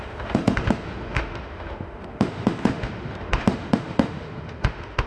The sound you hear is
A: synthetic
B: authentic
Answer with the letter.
A